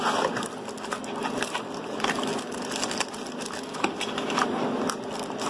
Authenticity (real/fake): real